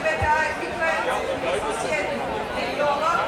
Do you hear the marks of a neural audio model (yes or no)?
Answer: no